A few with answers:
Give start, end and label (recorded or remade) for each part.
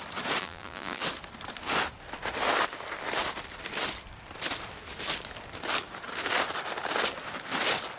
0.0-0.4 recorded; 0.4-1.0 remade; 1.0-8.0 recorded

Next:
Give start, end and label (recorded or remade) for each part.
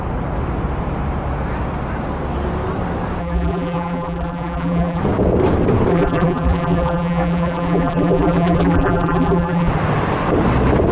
0.0-3.2 recorded; 3.2-5.0 remade; 5.0-5.9 recorded; 5.9-9.7 remade; 9.7-10.9 recorded